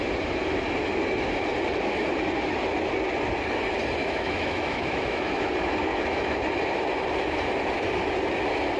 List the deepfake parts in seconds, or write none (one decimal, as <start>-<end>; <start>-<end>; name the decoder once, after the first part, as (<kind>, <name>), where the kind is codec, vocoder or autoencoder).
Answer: 4.0-5.5 (autoencoder, DAC-VAE); 5.9-6.4